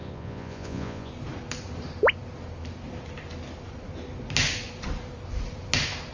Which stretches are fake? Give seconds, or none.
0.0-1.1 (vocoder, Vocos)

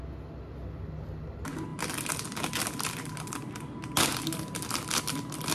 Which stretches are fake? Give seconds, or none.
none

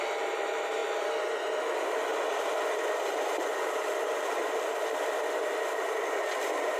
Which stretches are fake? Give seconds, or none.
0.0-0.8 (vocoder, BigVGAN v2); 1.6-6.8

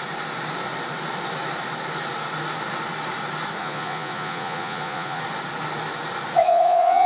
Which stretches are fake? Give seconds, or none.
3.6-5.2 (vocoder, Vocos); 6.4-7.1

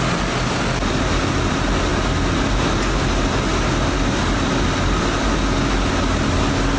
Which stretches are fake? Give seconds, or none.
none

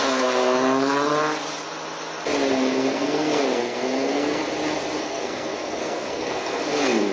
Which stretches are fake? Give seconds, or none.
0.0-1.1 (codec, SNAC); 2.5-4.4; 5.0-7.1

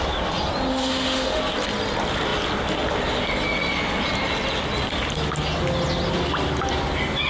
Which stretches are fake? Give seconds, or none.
0.7-1.4 (autoencoder, DAC-VAE)